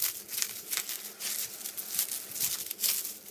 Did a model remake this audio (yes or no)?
no